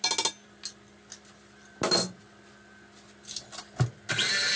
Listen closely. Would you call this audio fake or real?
real